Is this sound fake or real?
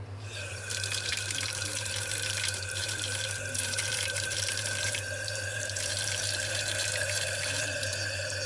fake